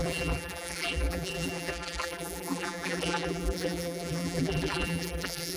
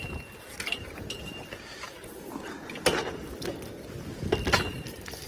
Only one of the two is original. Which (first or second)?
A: second